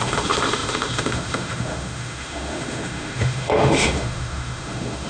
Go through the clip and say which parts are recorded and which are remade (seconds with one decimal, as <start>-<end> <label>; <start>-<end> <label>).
0.0-5.1 remade